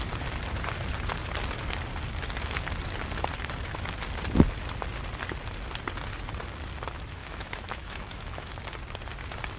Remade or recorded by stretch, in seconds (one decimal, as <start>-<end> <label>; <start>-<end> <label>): 0.0-7.2 recorded; 7.2-8.5 remade; 8.5-9.6 recorded